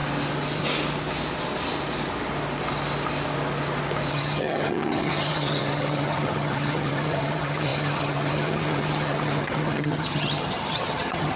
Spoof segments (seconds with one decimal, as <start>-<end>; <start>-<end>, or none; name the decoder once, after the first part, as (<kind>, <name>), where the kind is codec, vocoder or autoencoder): 4.1-11.4 (vocoder, HiFi-GAN)